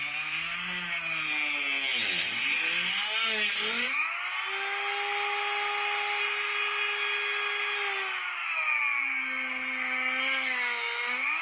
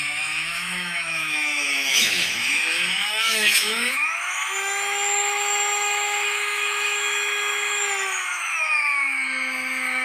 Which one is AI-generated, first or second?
second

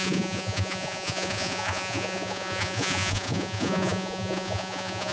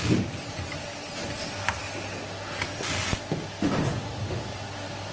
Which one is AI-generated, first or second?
first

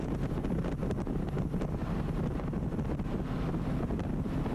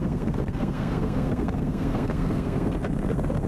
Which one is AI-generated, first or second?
second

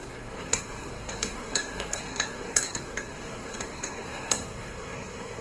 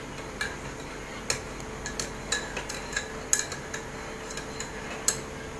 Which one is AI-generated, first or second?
first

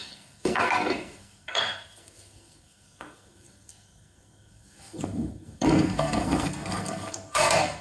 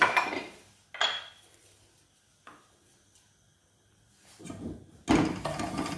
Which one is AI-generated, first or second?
first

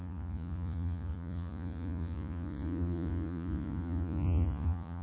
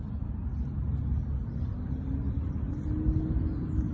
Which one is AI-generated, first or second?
first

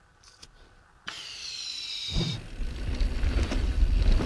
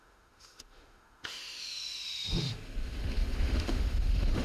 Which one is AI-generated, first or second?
second